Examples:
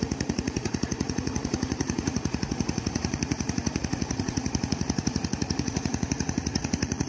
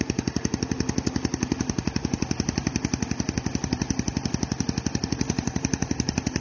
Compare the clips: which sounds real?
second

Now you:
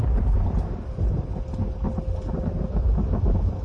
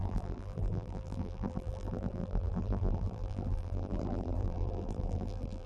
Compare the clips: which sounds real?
first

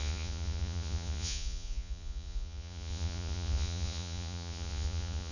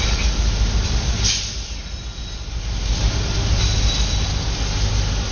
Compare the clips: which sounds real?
second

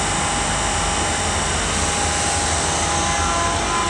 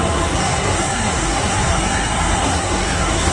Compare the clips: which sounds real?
first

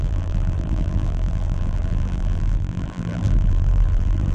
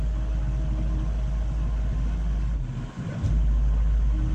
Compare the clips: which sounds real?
second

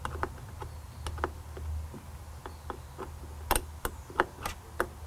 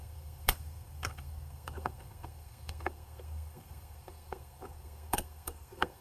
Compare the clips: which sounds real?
first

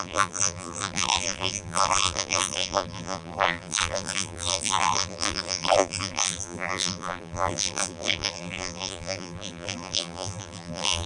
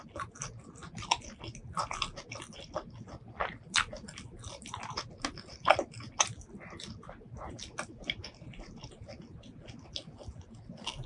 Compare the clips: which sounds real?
second